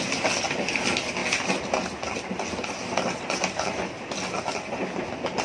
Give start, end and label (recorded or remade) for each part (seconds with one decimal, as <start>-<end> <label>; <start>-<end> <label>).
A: 0.0-5.4 recorded